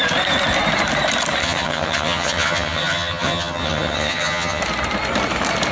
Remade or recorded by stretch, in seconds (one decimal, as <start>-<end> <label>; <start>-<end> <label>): 0.0-1.4 recorded; 1.4-4.6 remade; 4.6-5.7 recorded